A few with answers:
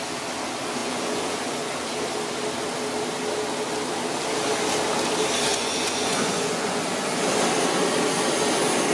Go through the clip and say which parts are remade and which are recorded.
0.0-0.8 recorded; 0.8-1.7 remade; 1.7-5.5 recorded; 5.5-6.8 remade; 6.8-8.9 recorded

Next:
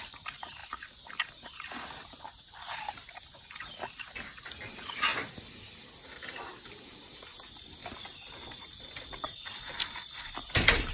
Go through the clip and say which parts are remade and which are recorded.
0.0-7.8 recorded; 7.8-8.9 remade; 8.9-10.9 recorded